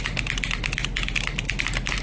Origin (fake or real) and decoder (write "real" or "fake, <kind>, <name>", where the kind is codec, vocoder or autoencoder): real